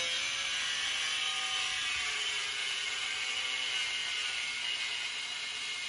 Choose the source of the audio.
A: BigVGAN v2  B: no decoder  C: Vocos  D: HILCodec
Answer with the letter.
B